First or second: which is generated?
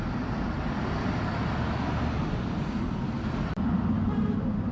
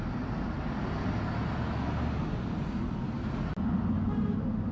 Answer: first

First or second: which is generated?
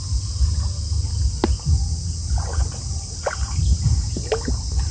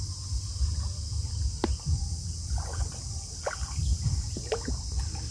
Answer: second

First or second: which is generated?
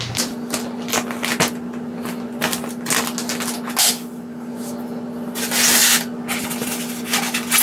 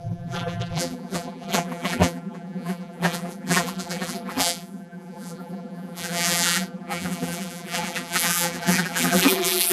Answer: second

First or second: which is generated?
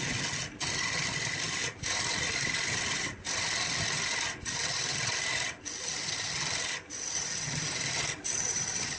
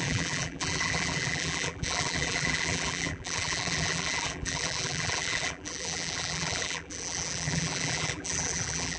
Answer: second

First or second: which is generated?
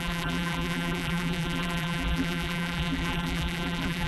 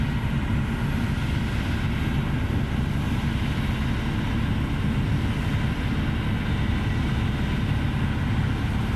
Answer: first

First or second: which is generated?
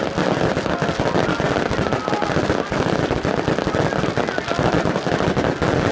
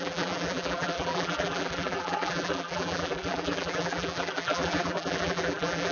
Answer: second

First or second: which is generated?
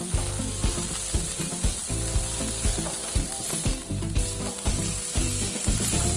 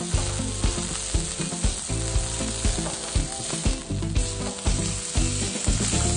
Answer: first